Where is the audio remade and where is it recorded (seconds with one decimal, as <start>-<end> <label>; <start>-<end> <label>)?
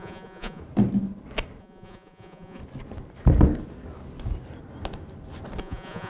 0.0-0.6 remade; 0.6-1.6 recorded; 1.6-2.6 remade; 2.6-5.6 recorded; 5.6-6.1 remade